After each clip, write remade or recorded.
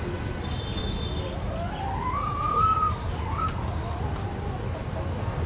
recorded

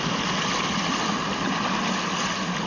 recorded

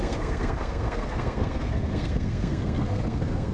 remade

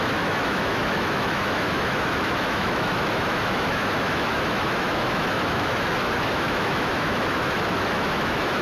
remade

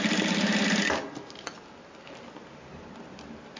recorded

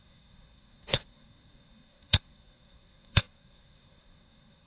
remade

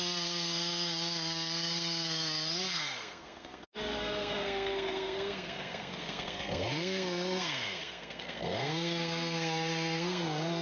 remade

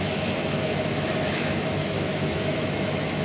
remade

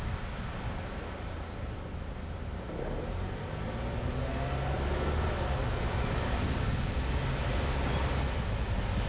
recorded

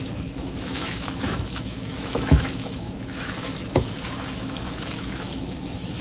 remade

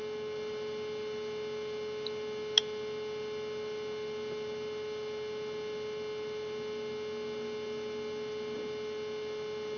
recorded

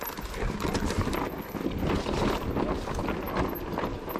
recorded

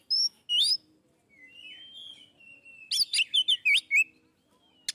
recorded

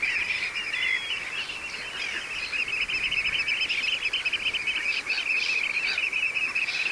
recorded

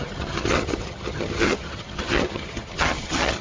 remade